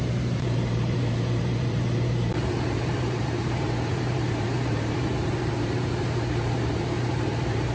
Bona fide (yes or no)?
no